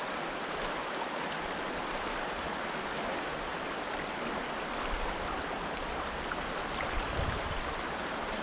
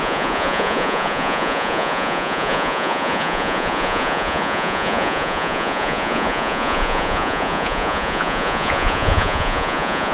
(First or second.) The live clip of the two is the first